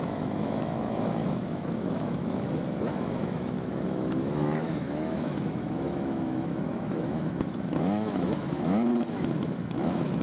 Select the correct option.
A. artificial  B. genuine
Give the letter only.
A